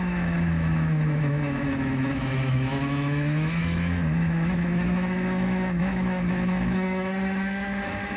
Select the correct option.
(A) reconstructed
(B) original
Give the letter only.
A